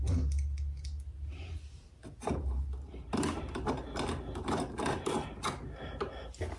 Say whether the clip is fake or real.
real